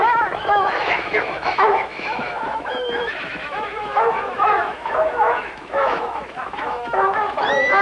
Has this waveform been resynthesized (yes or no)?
yes